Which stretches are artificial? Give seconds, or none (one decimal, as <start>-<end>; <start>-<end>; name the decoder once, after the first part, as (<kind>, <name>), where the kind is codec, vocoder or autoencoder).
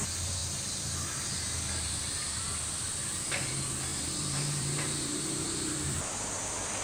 0.0-0.4 (vocoder, BigVGAN v2); 1.8-2.5; 3.1-6.8